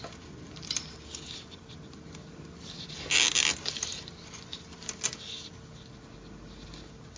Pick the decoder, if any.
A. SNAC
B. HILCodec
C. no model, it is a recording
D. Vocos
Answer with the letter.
C